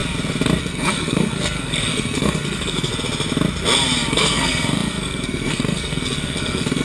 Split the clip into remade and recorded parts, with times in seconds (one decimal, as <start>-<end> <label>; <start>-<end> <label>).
0.0-0.6 recorded; 0.6-2.9 remade; 2.9-4.1 recorded; 4.1-6.8 remade